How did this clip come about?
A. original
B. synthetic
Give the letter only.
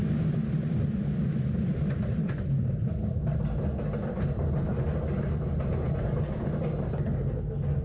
A